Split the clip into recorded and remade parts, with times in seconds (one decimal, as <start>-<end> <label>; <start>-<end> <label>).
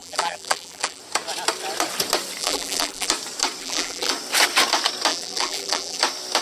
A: 0.0-1.0 remade; 1.0-2.4 recorded; 2.4-3.1 remade; 3.1-3.6 recorded; 3.6-4.1 remade; 4.1-5.1 recorded; 5.1-6.0 remade; 6.0-6.4 recorded